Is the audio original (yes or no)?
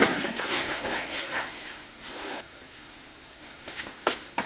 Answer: no